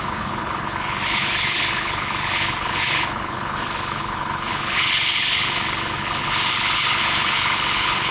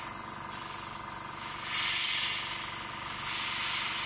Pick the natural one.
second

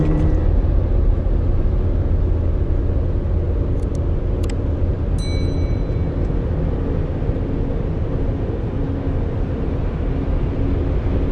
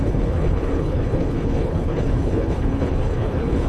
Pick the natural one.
first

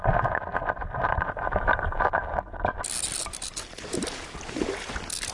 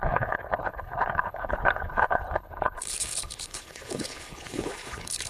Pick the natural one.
first